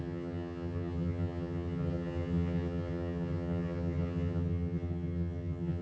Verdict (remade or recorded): remade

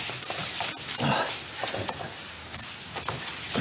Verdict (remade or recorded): recorded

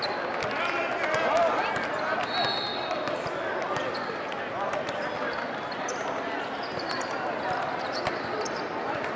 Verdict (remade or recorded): recorded